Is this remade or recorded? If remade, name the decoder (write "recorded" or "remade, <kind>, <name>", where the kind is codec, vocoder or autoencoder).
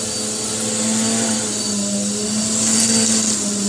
recorded